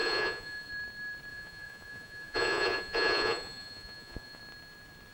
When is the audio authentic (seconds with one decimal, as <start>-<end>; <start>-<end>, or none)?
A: 0.7-1.3; 4.4-5.1

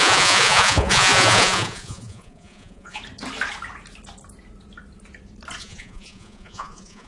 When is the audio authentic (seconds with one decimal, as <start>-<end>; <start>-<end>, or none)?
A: 3.0-5.6

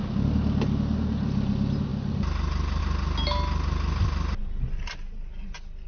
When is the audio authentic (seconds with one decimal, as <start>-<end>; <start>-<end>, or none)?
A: 0.0-5.9

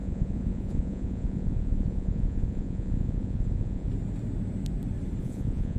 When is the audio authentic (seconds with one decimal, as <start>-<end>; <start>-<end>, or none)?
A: 3.9-5.2

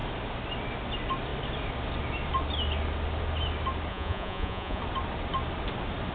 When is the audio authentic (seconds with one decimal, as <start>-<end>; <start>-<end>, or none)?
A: 0.0-3.9; 4.8-6.1

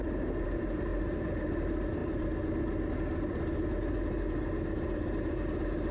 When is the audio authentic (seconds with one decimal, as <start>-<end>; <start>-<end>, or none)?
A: 0.0-5.9

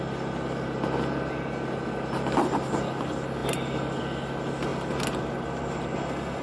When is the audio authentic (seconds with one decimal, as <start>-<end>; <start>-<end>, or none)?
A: 0.0-6.4